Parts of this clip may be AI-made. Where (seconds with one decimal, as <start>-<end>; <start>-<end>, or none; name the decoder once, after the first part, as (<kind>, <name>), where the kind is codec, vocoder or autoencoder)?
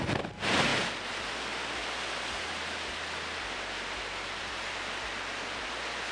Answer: none